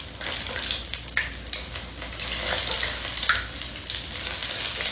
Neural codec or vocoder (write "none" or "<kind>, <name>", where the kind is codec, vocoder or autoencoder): none